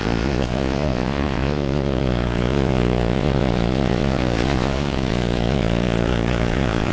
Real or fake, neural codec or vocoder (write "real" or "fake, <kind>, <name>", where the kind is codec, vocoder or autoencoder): fake, vocoder, Vocos